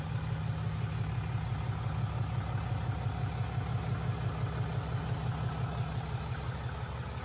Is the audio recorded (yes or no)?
yes